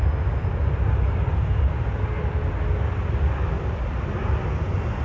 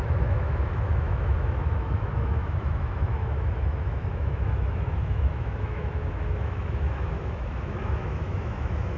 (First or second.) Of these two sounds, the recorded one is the first